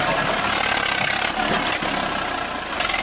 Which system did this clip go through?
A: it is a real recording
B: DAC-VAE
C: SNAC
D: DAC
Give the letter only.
A